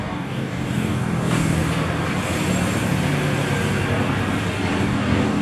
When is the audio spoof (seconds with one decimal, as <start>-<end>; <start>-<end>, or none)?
0.0-1.6; 4.8-5.4